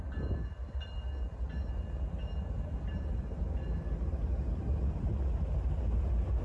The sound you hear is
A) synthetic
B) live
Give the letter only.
B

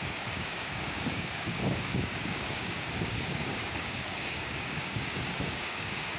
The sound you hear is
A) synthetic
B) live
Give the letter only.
A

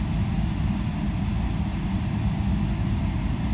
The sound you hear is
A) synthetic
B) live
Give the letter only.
B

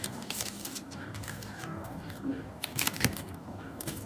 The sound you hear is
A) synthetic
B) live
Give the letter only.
A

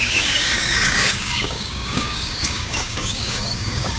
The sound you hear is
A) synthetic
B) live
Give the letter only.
A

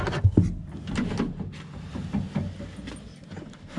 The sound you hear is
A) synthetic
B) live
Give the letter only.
B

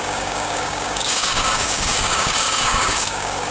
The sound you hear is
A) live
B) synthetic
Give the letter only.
B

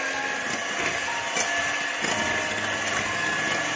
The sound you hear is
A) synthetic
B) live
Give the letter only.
B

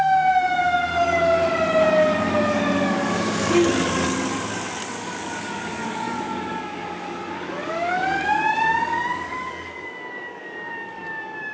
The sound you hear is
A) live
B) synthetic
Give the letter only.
B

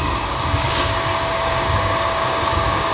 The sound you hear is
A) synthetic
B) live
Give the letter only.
A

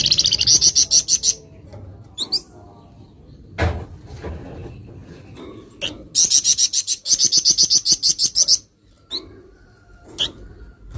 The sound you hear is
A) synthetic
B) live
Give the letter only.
B